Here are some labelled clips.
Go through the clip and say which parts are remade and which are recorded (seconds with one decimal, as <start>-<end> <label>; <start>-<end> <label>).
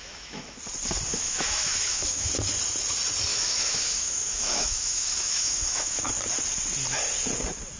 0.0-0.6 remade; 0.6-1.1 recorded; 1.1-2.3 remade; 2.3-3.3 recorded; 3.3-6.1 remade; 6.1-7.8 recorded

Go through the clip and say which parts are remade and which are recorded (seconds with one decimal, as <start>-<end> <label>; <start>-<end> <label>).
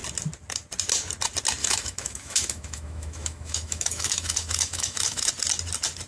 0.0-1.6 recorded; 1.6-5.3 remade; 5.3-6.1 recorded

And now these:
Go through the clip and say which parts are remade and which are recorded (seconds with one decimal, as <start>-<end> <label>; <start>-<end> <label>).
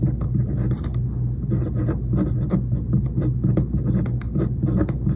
0.0-5.2 recorded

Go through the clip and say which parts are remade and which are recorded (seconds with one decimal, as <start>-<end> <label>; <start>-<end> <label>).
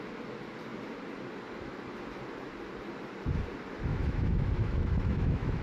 0.0-3.9 recorded; 3.9-5.6 remade